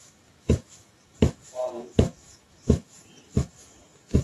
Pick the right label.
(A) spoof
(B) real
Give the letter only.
A